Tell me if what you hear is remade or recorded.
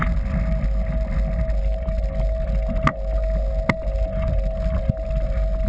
recorded